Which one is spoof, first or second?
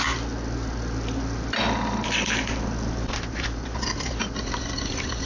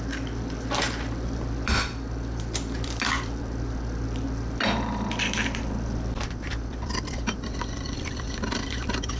second